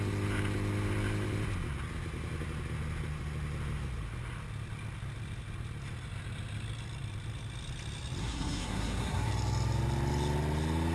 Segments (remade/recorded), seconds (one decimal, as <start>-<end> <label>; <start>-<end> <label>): 0.0-8.2 recorded; 8.2-9.3 remade; 9.3-10.9 recorded